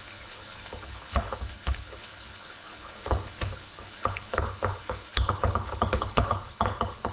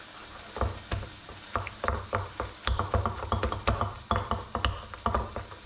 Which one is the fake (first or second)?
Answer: first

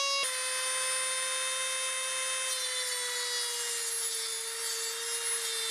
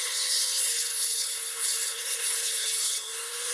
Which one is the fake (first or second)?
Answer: second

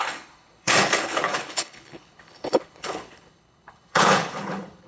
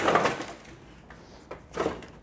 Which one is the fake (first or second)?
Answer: first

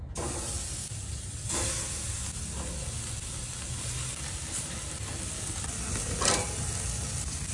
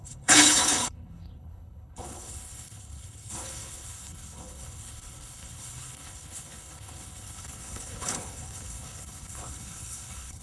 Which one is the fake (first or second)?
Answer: second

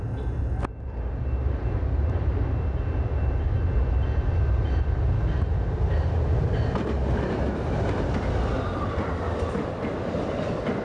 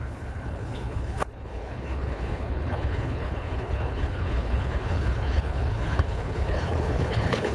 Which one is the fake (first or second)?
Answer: second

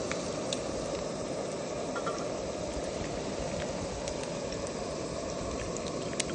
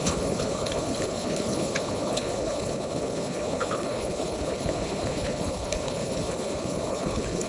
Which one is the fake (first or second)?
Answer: second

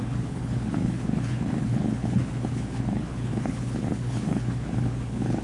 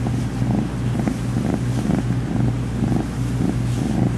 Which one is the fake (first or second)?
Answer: first